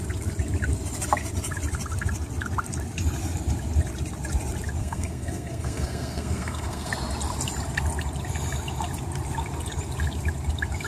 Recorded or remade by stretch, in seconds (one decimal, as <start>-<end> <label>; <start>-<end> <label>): 0.0-4.8 recorded; 4.8-6.9 remade; 6.9-10.9 recorded